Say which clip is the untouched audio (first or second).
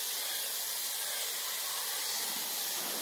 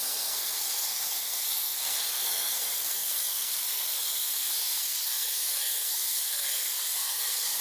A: first